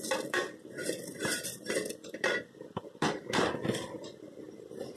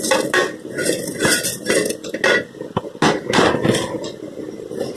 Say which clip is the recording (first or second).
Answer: second